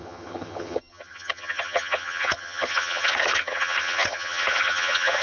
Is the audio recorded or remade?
remade